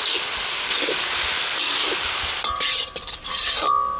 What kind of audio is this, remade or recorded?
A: recorded